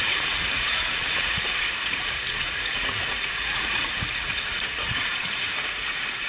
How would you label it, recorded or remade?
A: remade